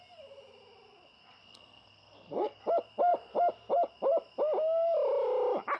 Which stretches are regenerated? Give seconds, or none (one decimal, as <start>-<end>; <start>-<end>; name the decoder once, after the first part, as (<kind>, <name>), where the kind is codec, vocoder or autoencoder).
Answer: 1.5-2.6 (codec, SNAC)